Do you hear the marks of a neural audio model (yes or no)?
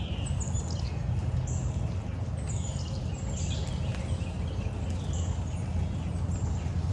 no